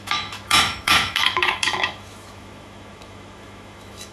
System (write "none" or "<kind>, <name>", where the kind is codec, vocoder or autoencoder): autoencoder, DAC-VAE